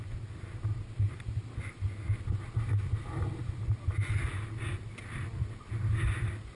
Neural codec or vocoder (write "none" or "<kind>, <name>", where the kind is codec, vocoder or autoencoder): none